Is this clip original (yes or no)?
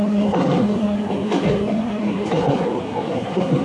no